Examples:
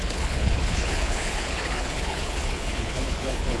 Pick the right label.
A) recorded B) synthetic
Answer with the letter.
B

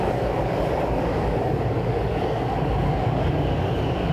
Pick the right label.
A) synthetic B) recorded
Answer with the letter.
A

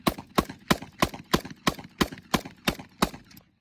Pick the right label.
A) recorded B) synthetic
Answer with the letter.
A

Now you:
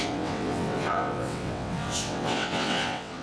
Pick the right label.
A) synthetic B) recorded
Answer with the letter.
A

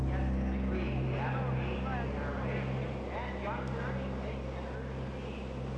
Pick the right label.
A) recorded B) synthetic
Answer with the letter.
A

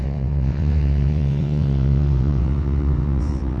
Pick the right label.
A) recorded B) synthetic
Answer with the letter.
B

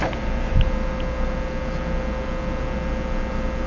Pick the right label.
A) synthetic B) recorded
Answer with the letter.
B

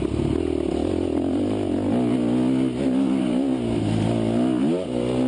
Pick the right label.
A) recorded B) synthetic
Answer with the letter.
A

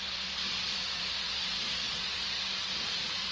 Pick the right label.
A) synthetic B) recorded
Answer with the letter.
A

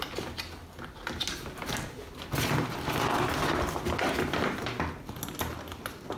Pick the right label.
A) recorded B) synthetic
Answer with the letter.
A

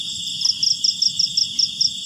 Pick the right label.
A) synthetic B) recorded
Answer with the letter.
B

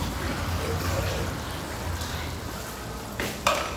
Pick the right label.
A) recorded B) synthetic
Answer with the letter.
A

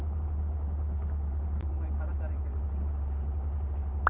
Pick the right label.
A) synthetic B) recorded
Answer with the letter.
B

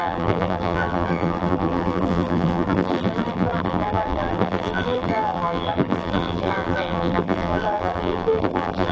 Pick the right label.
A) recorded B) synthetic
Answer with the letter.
B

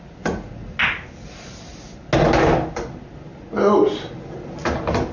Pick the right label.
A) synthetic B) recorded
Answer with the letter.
B